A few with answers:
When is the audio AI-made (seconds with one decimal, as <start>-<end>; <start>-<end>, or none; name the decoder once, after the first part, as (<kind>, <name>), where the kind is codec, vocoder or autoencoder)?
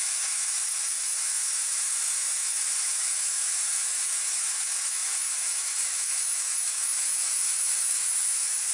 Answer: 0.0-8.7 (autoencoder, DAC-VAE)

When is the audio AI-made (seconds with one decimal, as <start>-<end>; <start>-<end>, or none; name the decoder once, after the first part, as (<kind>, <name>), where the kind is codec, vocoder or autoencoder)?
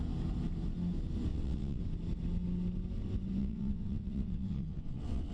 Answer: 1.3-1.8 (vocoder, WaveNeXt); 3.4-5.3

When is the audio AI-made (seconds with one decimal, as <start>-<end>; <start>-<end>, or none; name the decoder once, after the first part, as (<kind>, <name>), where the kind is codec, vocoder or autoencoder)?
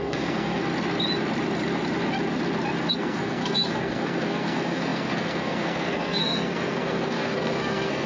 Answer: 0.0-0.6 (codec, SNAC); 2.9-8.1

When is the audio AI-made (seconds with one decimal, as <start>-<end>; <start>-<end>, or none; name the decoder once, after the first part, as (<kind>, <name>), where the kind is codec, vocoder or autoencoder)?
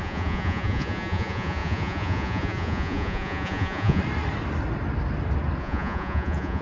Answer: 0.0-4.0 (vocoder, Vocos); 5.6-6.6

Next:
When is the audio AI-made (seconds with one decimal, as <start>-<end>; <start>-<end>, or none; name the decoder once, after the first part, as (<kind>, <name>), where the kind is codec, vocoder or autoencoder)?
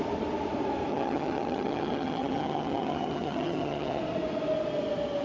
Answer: 0.9-4.0 (vocoder, HiFi-GAN)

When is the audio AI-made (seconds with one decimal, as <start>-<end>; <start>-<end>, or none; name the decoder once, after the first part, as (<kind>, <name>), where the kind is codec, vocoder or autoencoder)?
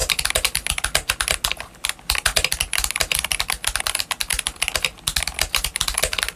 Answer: none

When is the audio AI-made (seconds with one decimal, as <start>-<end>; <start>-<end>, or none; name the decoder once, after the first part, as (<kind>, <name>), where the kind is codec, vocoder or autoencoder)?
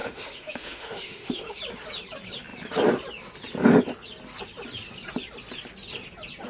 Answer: 0.0-1.6 (autoencoder, DAC-VAE)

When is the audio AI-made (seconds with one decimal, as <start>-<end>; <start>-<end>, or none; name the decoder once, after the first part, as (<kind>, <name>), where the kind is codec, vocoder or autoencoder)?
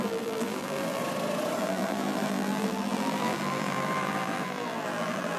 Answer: 0.0-1.0 (vocoder, BigVGAN v2); 1.6-5.4